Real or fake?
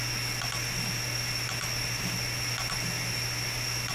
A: real